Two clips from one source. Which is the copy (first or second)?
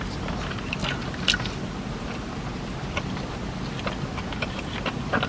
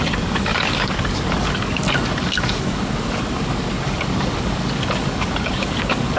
second